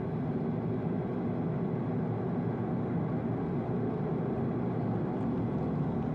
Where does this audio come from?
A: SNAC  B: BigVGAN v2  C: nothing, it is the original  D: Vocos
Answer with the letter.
C